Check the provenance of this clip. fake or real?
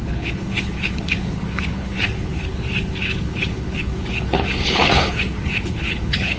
fake